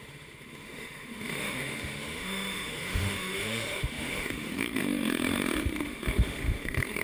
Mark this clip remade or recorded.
remade